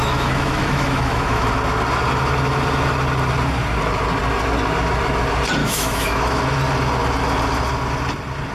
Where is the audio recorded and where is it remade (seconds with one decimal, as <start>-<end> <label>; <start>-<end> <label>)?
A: 0.0-1.5 remade; 1.5-5.6 recorded; 5.6-6.4 remade; 6.4-8.5 recorded